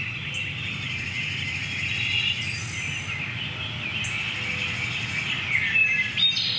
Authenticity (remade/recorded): recorded